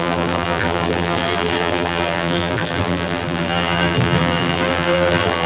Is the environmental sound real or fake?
fake